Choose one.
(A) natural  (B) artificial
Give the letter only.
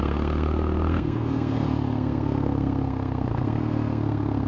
B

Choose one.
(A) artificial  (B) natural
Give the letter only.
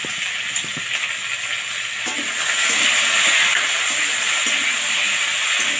B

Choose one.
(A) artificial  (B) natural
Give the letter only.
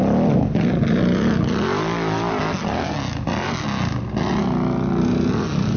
B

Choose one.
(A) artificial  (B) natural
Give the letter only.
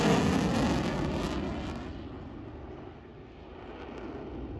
B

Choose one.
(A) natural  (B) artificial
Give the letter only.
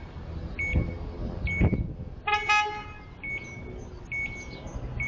A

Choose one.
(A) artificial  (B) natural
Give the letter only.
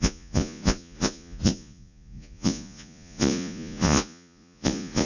A